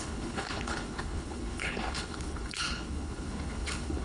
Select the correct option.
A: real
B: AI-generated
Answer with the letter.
B